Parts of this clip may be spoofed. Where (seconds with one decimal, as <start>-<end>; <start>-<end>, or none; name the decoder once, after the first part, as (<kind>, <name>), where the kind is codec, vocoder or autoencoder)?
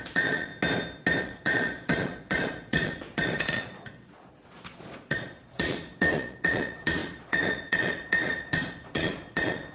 0.0-0.5 (vocoder, Vocos); 1.2-9.7